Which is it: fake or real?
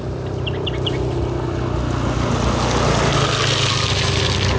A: real